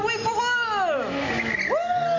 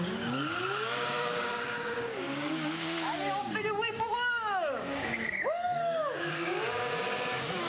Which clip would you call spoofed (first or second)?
second